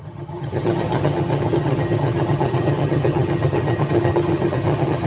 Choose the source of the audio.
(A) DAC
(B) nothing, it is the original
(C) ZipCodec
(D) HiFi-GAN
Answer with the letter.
D